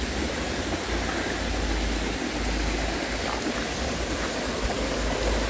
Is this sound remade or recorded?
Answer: recorded